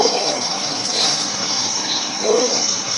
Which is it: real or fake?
fake